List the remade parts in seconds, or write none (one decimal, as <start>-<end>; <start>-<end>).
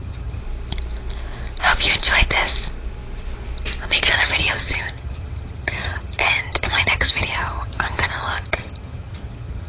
0.0-0.4; 4.1-9.7